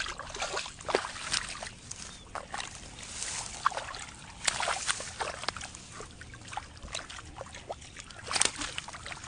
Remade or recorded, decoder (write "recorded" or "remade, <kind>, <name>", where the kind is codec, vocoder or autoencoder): recorded